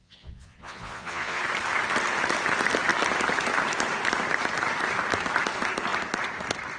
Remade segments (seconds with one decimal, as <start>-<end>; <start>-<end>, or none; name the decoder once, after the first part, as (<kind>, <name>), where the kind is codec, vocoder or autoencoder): 0.0-1.4 (vocoder, Vocos)